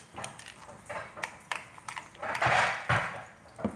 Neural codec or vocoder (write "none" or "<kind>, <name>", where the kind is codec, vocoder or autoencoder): none